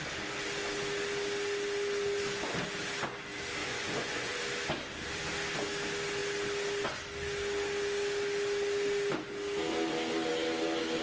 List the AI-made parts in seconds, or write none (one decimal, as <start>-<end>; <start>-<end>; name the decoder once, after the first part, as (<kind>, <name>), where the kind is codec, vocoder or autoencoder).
3.6-4.4 (vocoder, Vocos)